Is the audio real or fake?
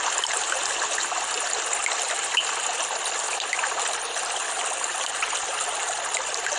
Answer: real